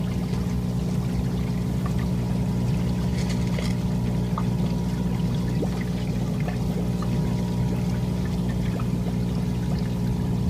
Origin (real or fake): real